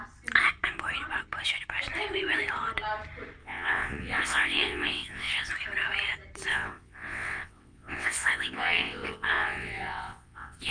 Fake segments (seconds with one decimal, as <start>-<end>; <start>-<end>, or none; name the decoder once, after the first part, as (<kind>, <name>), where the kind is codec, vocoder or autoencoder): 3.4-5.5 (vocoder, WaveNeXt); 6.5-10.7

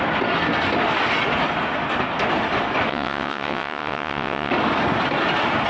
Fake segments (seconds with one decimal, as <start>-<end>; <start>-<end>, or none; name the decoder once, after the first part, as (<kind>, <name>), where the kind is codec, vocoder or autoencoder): 2.9-4.5 (vocoder, WaveNeXt)

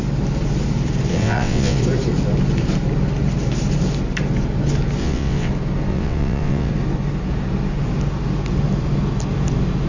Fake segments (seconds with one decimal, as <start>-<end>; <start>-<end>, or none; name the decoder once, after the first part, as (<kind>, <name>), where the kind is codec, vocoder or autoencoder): 1.1-1.8 (vocoder, WaveNeXt); 5.0-5.5; 5.9-6.7